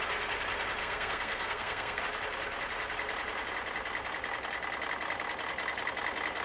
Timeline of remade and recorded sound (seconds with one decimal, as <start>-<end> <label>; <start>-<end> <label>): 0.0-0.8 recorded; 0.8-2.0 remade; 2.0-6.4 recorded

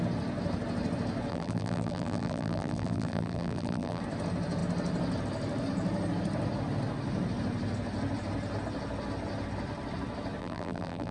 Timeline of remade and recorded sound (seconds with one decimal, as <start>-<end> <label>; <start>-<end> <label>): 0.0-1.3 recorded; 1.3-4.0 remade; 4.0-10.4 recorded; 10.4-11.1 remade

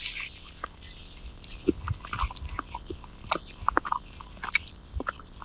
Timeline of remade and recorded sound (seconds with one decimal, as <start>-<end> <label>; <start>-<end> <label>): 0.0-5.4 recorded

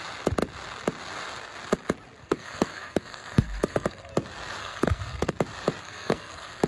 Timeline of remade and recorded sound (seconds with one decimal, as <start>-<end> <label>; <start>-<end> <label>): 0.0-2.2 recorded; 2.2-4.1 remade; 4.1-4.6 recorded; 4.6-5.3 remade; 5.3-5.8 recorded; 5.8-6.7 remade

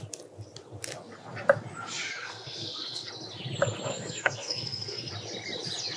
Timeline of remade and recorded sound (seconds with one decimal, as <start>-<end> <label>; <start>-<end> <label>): 0.0-2.2 recorded; 2.2-3.1 remade; 3.1-3.9 recorded; 3.9-5.1 remade; 5.1-6.0 recorded

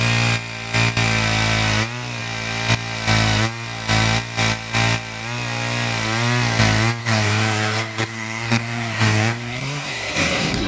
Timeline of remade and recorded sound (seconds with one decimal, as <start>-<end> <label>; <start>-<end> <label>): 0.0-7.0 recorded; 7.0-10.7 remade

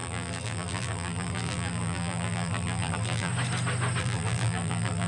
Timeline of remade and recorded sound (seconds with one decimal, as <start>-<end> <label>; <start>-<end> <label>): 0.0-3.3 remade; 3.3-4.0 recorded; 4.0-5.1 remade

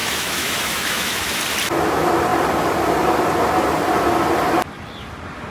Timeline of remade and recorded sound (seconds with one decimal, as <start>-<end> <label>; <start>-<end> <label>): 0.0-1.4 remade; 1.4-5.5 recorded